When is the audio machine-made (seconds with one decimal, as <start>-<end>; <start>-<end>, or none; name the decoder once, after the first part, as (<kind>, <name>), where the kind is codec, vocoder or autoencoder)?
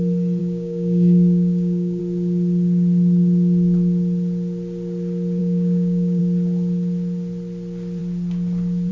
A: 0.4-2.0 (codec, DAC); 5.4-6.2